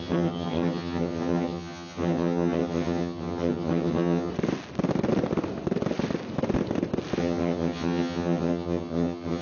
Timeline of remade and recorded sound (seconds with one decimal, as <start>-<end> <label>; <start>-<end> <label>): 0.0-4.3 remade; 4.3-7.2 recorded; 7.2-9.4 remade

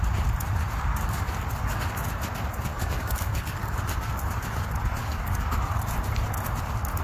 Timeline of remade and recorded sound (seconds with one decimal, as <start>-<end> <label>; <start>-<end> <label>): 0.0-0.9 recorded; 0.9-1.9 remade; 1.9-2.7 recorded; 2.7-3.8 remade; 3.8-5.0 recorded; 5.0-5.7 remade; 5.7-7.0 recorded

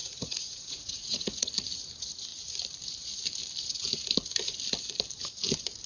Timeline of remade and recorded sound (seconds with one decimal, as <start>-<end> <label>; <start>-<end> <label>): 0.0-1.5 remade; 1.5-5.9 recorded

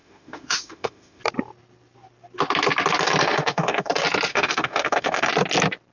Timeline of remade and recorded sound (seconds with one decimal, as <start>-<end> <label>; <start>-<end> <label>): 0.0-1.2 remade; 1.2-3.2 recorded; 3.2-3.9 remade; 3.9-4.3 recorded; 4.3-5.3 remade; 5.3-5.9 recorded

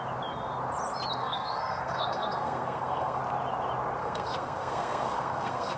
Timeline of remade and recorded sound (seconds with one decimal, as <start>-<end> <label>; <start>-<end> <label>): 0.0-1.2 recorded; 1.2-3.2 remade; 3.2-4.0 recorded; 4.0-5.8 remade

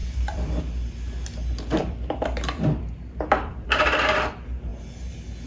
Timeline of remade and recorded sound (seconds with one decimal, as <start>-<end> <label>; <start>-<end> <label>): 0.0-0.6 remade; 0.6-1.8 recorded; 1.8-4.3 remade; 4.3-5.5 recorded